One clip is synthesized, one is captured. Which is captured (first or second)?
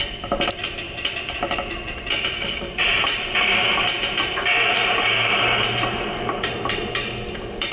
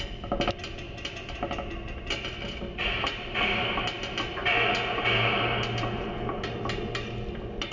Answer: second